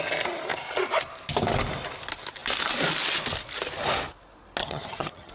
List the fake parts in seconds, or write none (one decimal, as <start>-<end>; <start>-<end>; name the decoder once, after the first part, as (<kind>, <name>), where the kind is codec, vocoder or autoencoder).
4.6-5.3 (vocoder, HiFi-GAN)